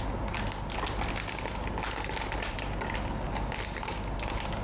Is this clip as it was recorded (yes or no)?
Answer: yes